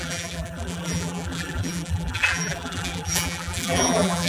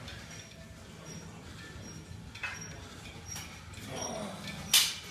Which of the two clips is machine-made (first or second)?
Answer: first